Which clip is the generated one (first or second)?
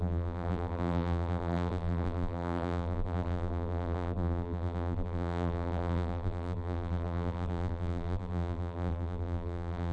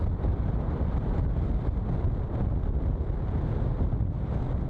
first